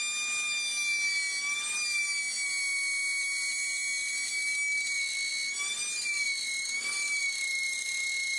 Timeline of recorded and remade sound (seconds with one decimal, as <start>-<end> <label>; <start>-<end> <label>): 0.0-8.4 recorded